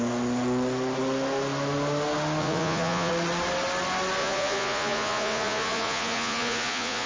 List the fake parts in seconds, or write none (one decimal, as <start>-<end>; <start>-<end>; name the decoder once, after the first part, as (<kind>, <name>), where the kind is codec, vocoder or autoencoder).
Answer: 2.4-3.1 (vocoder, Vocos); 4.2-7.1